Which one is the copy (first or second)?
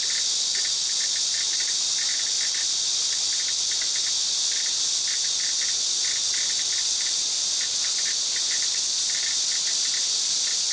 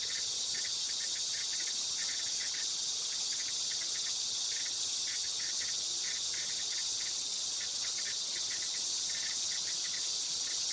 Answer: second